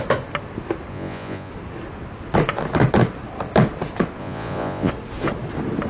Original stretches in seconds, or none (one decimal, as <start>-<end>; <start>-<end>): 0.0-0.9; 1.5-4.2; 4.9-5.9